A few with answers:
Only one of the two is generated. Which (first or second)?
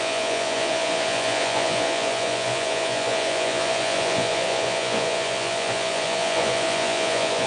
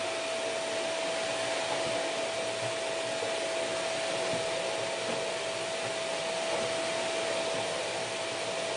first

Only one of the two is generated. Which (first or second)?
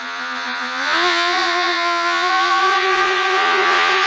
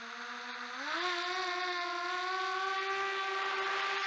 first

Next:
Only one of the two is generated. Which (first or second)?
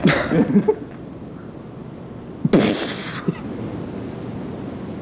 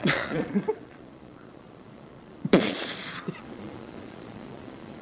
second